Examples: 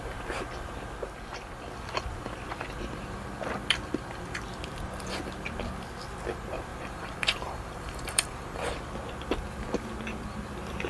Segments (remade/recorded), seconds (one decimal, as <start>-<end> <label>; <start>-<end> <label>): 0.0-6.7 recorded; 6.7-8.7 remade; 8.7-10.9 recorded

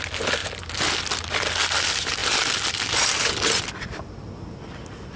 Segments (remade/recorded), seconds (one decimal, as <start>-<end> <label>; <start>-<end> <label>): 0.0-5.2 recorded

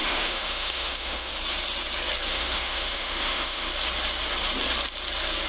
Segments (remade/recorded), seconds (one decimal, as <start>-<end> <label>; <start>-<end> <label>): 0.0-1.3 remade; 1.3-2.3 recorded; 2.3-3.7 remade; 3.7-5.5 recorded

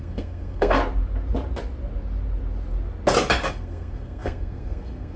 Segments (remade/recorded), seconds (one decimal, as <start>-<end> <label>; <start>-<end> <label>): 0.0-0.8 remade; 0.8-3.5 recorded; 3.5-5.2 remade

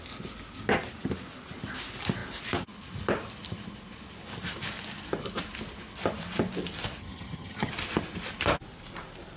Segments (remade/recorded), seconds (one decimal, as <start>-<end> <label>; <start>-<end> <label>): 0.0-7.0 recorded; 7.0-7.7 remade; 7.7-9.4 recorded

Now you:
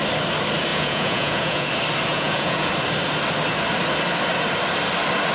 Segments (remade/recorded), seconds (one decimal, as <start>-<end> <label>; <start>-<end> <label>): 0.0-0.7 recorded; 0.7-1.7 remade; 1.7-2.1 recorded; 2.1-2.7 remade; 2.7-5.3 recorded